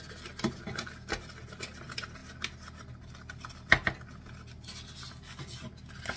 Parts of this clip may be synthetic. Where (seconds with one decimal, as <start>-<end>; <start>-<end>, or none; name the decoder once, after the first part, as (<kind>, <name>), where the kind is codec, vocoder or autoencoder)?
none

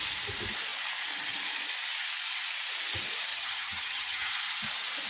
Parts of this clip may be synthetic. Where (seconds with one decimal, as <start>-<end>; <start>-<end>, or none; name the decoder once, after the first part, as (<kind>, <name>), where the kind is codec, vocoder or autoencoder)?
3.3-4.3 (vocoder, HiFi-GAN)

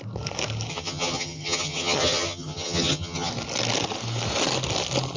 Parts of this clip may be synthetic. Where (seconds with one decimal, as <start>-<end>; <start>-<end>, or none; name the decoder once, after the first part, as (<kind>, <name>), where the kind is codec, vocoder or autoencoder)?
0.7-3.3 (vocoder, HiFi-GAN)

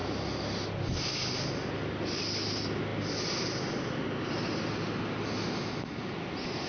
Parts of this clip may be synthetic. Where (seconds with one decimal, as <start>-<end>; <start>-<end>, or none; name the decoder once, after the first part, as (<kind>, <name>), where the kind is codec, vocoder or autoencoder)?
none

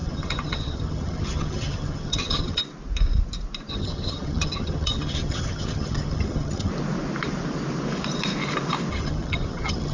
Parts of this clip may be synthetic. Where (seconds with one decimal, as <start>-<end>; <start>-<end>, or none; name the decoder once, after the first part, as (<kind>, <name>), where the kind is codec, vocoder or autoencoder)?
0.0-2.6 (vocoder, HiFi-GAN); 3.7-6.7; 8.9-9.9

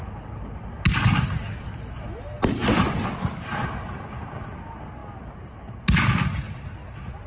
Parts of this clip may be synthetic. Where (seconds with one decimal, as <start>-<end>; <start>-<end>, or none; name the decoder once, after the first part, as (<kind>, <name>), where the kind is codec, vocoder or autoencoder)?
none

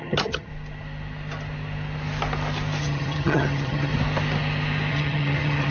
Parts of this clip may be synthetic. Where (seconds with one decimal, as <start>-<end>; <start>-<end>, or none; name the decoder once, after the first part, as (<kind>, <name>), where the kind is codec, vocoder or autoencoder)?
0.0-0.5 (vocoder, HiFi-GAN); 2.8-3.9; 4.9-5.7